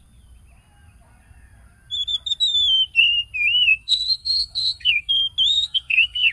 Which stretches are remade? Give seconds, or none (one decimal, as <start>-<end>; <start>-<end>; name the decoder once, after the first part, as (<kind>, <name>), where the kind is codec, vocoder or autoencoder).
3.7-5.1 (codec, SNAC); 5.5-6.3